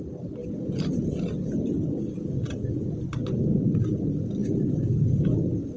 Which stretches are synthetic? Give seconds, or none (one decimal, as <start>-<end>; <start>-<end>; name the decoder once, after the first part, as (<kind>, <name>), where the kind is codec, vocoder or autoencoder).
none